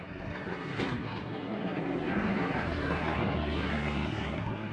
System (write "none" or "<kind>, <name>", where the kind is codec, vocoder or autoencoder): codec, SNAC